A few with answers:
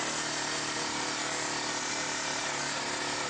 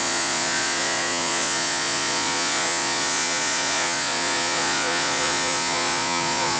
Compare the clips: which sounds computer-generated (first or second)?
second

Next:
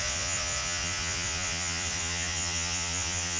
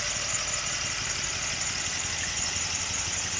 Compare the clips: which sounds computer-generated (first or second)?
first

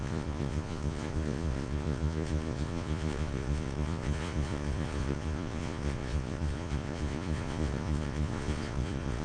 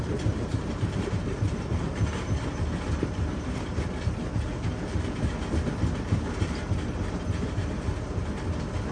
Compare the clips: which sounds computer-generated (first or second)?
first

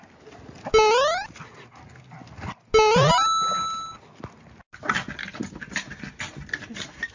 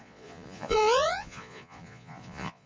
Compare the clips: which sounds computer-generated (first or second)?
second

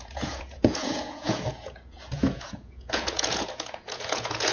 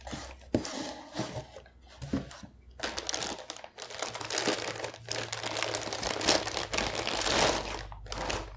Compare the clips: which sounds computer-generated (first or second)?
first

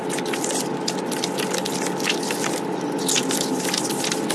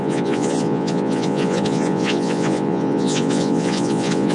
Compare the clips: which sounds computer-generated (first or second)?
second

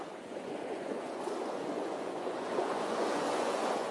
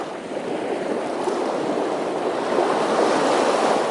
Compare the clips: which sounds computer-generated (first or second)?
first